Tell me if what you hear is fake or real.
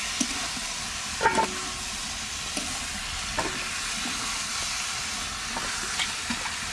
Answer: real